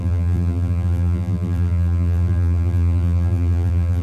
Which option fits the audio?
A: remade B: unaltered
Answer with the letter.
A